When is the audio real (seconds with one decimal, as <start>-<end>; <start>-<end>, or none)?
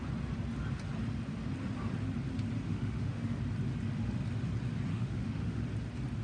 0.0-2.7; 3.4-4.9; 5.6-6.2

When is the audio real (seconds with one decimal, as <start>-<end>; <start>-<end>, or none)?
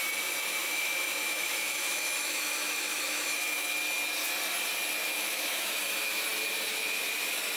0.0-0.6; 3.7-5.0; 5.7-7.6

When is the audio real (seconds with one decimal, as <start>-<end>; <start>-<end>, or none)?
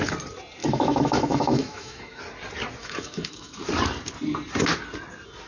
0.0-0.6; 2.2-2.8; 3.6-5.5